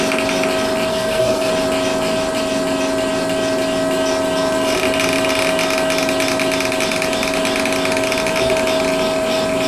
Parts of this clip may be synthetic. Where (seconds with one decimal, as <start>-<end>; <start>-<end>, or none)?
0.9-1.5